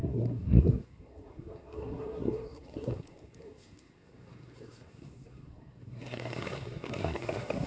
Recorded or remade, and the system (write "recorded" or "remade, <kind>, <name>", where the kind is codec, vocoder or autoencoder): remade, codec, SNAC